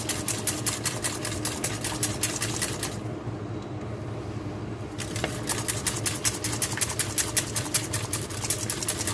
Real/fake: real